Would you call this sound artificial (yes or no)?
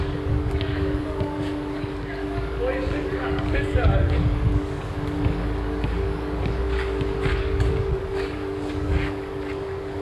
yes